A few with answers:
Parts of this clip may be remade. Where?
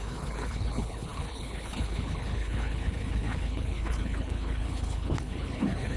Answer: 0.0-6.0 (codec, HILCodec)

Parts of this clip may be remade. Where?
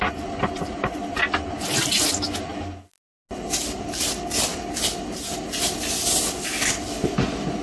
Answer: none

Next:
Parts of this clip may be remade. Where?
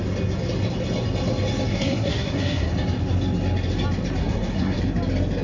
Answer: 1.7-2.7 (codec, SNAC); 4.2-4.8